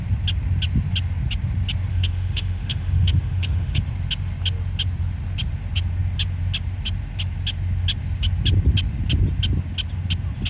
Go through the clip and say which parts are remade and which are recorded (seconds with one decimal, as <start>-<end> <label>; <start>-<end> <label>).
0.0-1.9 recorded; 1.9-3.8 remade; 3.8-10.5 recorded